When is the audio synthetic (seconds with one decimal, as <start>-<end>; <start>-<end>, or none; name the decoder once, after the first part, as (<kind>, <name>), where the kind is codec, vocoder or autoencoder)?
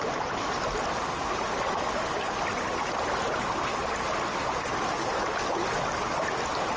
none